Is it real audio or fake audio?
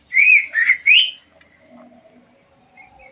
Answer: real